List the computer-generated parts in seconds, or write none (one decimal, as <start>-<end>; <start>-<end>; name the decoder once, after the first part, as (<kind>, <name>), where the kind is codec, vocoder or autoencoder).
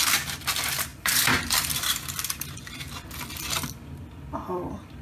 0.9-3.9 (vocoder, BigVGAN v2)